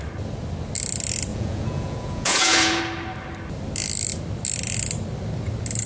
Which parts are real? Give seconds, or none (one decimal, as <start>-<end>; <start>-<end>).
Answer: 0.0-1.3; 2.8-5.9